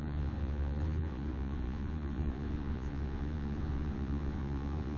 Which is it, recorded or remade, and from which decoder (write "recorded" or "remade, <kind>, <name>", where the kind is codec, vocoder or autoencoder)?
remade, vocoder, Vocos